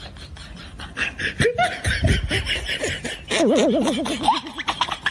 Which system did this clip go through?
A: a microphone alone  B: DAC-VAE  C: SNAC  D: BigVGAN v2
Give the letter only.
A